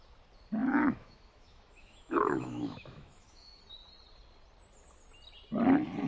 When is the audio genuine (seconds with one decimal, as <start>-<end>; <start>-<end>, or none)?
0.0-0.6; 3.6-6.1